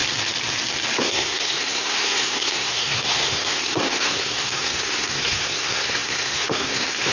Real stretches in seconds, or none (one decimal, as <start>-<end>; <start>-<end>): 0.0-1.0